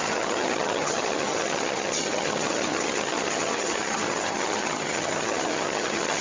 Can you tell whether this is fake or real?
fake